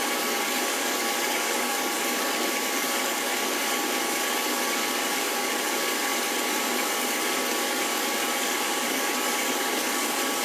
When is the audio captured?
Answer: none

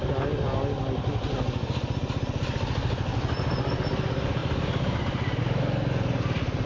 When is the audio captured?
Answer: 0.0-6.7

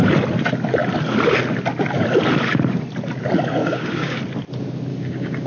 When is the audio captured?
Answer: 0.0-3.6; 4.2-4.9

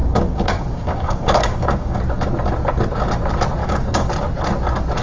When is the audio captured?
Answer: 2.0-3.6; 4.1-5.0

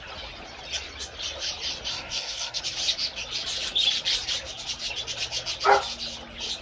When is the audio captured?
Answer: 0.0-1.9; 2.6-6.6

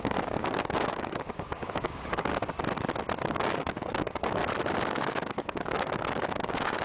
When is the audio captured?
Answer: 2.3-3.3; 4.4-4.9

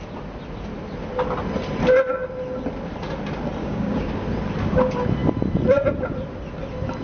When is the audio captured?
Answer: 0.0-3.6; 4.1-7.0